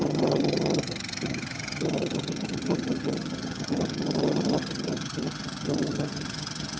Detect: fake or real fake